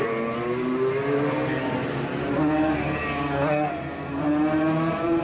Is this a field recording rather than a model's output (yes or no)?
yes